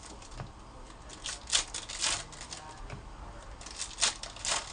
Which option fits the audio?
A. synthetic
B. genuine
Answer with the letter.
B